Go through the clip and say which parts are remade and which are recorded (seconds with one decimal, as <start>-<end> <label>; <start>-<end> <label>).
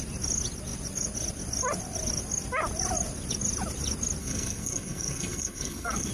0.0-4.2 recorded; 4.2-6.1 remade